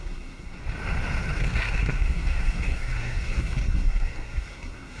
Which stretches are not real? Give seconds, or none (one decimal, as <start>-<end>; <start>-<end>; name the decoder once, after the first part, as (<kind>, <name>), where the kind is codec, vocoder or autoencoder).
0.0-0.6 (codec, SNAC); 1.4-5.0